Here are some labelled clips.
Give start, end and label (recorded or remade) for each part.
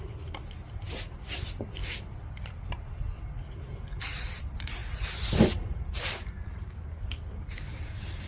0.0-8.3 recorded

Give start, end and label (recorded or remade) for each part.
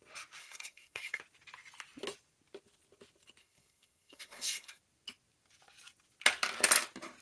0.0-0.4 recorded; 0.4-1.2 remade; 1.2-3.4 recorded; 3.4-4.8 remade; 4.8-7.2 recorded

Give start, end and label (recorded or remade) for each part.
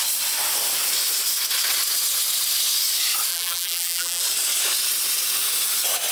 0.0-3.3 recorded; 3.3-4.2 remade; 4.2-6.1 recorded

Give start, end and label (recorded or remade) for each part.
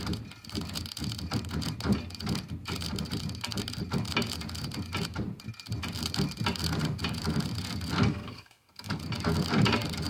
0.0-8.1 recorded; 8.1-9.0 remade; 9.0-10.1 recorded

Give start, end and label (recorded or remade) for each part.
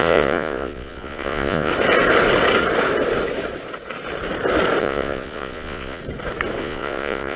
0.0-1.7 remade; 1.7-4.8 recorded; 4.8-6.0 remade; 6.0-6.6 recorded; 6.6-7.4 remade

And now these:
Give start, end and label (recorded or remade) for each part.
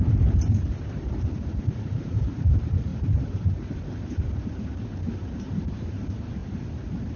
0.0-7.2 remade